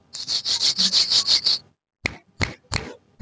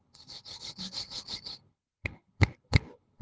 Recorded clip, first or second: first